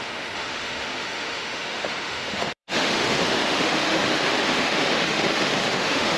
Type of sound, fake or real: fake